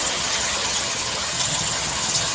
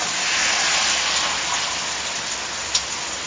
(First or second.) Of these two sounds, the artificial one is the first